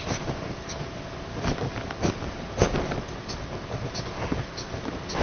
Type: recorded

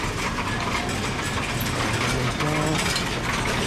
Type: recorded